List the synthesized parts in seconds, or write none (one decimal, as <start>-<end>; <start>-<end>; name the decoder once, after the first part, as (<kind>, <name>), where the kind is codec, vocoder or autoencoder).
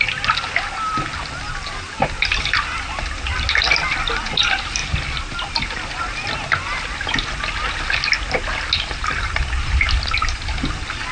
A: none